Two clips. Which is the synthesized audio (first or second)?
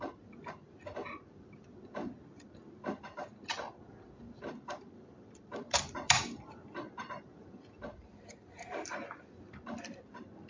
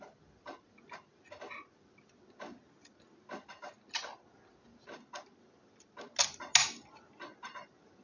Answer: first